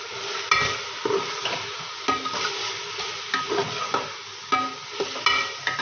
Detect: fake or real real